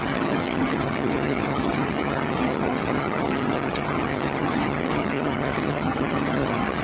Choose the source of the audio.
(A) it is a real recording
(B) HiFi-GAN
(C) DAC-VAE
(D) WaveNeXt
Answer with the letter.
B